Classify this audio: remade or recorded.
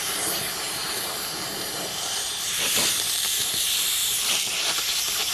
remade